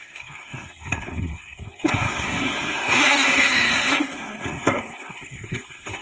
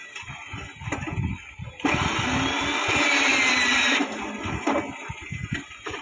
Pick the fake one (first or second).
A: first